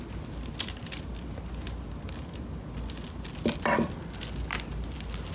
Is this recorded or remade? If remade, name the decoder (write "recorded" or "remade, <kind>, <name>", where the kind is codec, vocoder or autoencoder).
recorded